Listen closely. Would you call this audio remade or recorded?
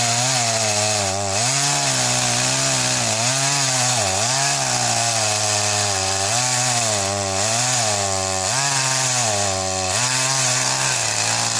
recorded